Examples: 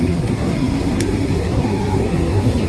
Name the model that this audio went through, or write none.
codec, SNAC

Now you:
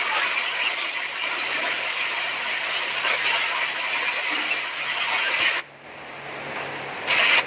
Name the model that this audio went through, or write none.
none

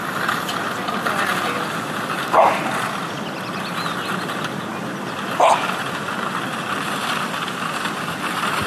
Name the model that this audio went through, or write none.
none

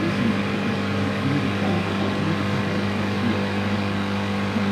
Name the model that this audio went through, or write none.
codec, DAC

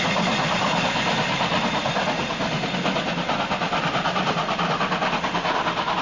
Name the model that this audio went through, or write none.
none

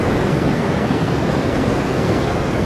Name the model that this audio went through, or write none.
codec, SNAC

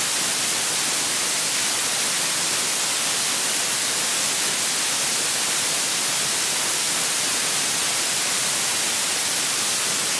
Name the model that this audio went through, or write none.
none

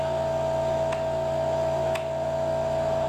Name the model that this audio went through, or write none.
none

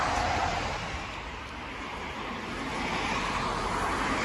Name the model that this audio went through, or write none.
none